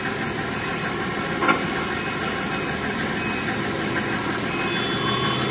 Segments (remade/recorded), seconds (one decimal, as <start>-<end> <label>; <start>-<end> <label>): 0.0-0.7 recorded; 0.7-1.7 remade; 1.7-5.5 recorded